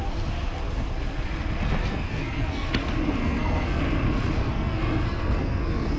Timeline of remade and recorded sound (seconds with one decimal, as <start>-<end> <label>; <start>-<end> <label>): 0.0-1.8 recorded; 1.8-2.7 remade; 2.7-3.2 recorded; 3.2-3.8 remade; 3.8-4.4 recorded; 4.4-6.0 remade